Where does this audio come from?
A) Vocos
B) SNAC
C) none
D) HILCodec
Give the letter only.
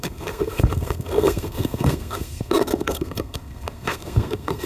B